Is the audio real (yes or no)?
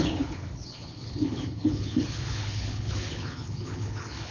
no